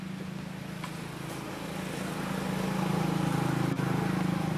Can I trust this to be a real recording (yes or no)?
yes